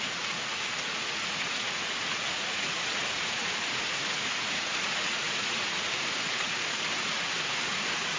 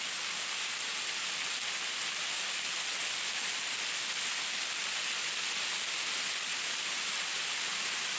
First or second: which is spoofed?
first